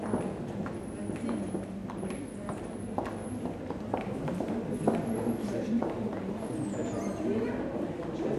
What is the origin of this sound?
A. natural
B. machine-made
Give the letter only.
A